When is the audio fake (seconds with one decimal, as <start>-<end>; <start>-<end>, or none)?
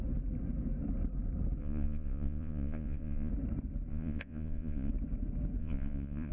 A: 1.6-3.3; 3.9-4.9; 5.6-6.3